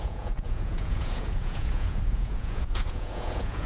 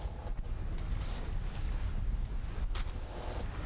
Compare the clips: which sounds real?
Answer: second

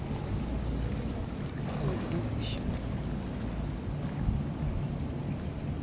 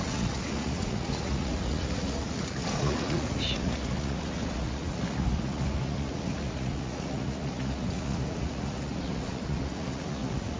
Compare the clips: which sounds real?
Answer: first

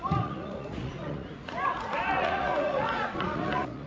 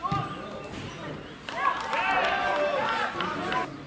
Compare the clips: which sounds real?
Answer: second